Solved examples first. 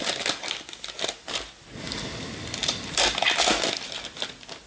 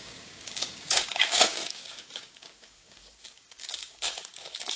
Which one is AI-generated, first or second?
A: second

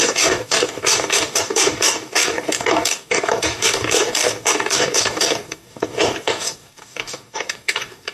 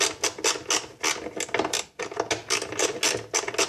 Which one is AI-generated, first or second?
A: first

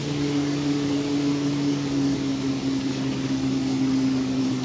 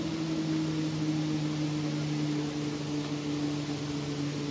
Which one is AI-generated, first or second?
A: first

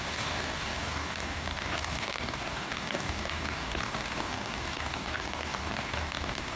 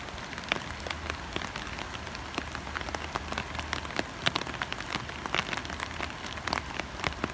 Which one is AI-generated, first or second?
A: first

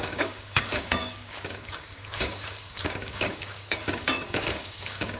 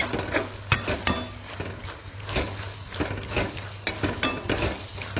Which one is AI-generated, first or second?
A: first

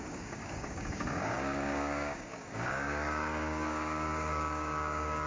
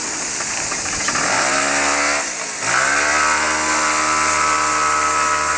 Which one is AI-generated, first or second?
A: first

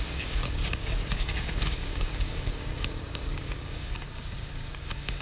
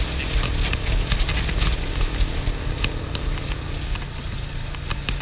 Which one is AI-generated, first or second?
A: first